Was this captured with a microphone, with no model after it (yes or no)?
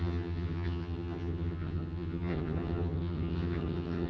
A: no